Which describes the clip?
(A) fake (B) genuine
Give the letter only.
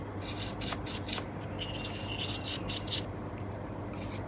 B